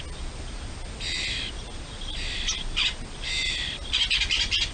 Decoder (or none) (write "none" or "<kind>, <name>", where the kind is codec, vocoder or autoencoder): none